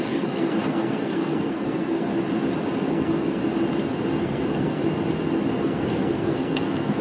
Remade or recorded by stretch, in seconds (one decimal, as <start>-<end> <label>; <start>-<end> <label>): 0.0-2.1 remade; 2.1-2.9 recorded; 2.9-3.4 remade; 3.4-4.2 recorded; 4.2-4.8 remade; 4.8-5.6 recorded; 5.6-7.0 remade